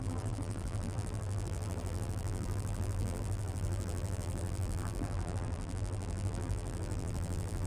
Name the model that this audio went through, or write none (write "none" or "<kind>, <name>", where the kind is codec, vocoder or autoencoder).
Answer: vocoder, BigVGAN v2